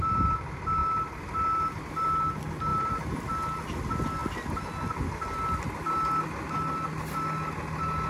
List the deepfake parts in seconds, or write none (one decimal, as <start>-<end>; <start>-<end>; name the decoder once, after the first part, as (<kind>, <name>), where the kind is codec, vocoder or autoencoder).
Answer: 2.7-3.3 (vocoder, BigVGAN v2)